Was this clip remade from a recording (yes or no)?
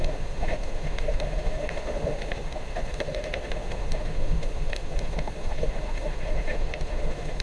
yes